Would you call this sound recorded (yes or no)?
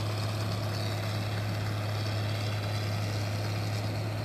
yes